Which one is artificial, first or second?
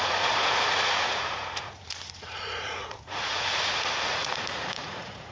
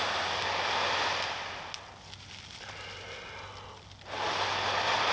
first